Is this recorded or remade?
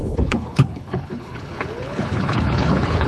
remade